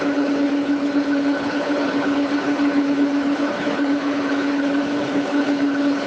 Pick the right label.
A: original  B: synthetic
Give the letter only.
B